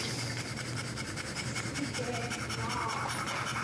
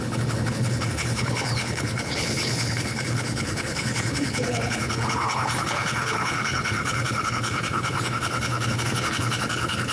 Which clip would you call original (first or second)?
first